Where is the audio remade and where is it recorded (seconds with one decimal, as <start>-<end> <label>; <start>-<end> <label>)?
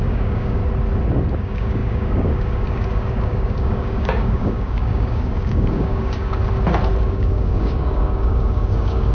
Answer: 0.0-0.6 remade; 0.6-1.4 recorded; 1.4-6.4 remade; 6.4-7.0 recorded; 7.0-9.1 remade